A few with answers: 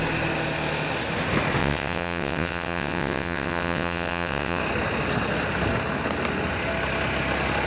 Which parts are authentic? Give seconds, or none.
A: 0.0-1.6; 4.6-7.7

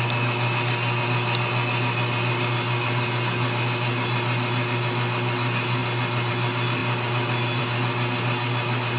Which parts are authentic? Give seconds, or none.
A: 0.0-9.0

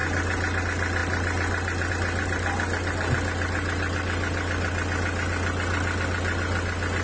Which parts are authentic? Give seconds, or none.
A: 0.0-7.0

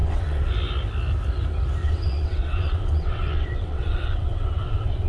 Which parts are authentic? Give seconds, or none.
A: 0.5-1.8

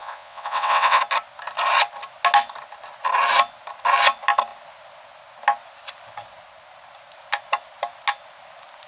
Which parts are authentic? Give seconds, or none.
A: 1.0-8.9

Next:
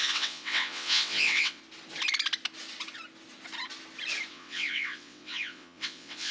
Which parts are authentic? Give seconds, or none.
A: 1.6-4.3

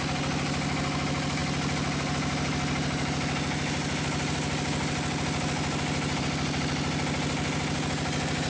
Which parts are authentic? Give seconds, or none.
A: 0.0-8.5